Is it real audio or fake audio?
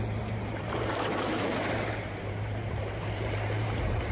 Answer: fake